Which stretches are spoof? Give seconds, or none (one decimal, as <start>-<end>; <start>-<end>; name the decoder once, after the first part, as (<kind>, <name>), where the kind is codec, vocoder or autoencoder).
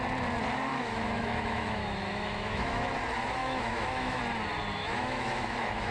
0.7-2.9 (autoencoder, DAC-VAE); 3.4-4.2; 4.8-5.9